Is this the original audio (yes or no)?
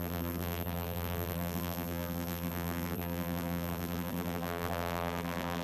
no